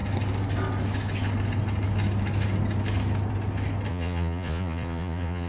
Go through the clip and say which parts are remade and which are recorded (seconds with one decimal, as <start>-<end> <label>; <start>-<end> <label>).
0.0-3.9 recorded; 3.9-5.5 remade